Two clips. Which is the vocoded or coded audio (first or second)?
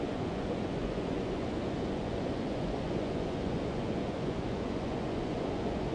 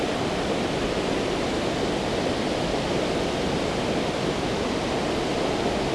first